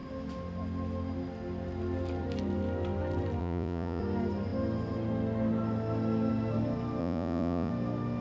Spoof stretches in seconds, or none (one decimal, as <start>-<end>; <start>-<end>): 3.4-4.0; 7.0-7.7